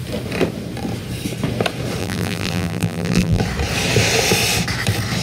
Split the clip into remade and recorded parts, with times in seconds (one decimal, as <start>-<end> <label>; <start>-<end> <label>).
0.0-2.0 recorded; 2.0-3.4 remade; 3.4-5.2 recorded